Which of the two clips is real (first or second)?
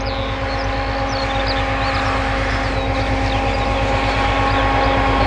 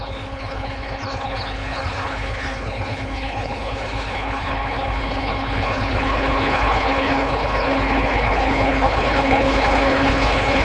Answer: first